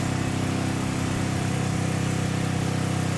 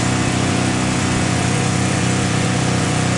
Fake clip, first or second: second